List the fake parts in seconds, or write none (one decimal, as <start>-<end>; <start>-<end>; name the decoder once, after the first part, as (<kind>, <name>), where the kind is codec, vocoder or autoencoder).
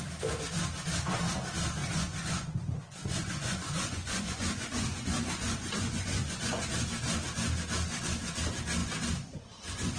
1.8-6.6 (vocoder, Vocos); 8.8-10.0